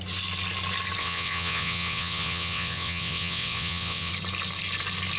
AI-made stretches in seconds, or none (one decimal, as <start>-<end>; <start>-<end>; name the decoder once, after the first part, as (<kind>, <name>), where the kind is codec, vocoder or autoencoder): 1.0-4.1 (vocoder, WaveNeXt)